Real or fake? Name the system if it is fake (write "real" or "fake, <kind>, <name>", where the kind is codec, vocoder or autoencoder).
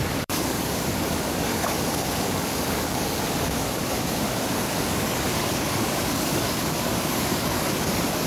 fake, codec, DAC